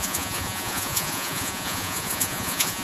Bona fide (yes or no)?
no